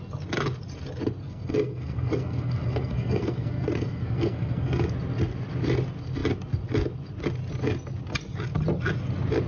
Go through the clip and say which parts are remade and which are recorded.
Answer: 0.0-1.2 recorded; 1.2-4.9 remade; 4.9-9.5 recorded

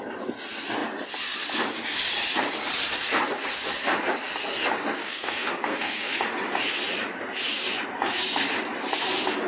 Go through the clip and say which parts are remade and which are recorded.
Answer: 0.0-5.0 recorded; 5.0-6.2 remade; 6.2-9.5 recorded

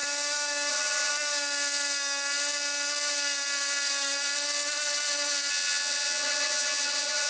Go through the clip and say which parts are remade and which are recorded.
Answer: 0.0-0.7 recorded; 0.7-1.1 remade; 1.1-5.5 recorded; 5.5-7.3 remade